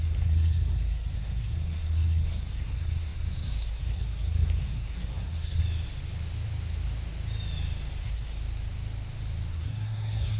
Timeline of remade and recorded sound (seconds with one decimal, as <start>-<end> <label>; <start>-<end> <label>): 0.0-5.6 remade; 5.6-8.0 recorded; 8.0-8.4 remade; 8.4-9.5 recorded; 9.5-10.4 remade